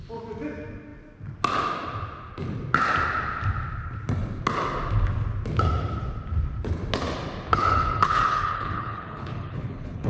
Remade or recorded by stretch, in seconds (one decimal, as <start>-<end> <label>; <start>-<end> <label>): 0.0-7.5 recorded; 7.5-10.1 remade